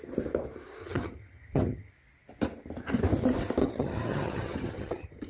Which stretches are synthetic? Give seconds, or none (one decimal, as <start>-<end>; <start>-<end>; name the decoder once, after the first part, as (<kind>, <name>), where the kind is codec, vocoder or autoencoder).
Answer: 0.8-1.9 (vocoder, HiFi-GAN); 3.6-5.3